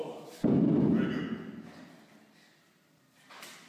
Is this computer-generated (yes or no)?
no